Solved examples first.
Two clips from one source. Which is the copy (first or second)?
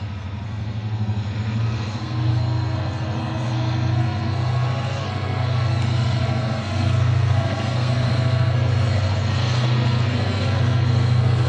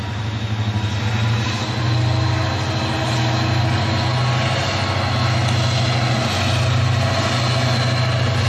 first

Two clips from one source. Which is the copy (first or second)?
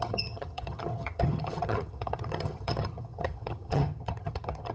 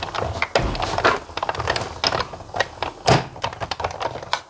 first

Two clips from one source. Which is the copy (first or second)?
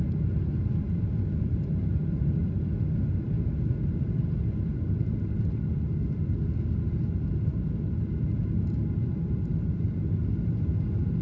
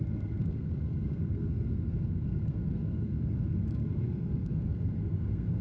second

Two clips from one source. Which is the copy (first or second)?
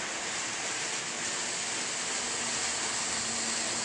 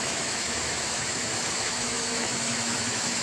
second